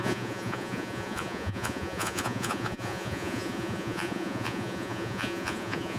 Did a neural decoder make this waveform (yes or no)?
yes